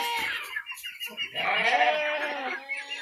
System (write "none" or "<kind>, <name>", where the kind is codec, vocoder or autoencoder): none